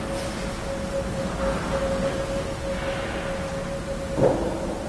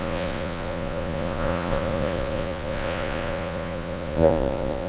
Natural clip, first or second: first